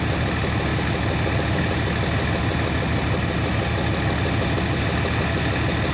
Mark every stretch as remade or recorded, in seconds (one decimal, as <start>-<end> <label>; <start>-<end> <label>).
0.0-5.9 recorded